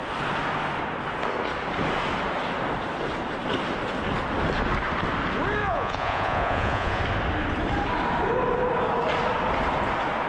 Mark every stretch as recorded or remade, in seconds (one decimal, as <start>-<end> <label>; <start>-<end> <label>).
0.0-5.6 recorded; 5.6-7.0 remade; 7.0-10.3 recorded